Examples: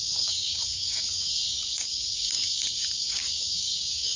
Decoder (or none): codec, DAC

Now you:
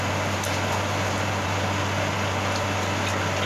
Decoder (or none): none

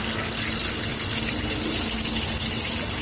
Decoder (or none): none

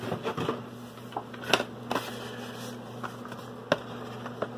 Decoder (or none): none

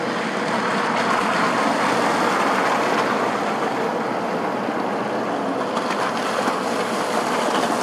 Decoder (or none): none